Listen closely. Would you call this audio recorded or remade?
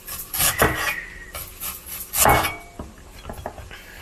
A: recorded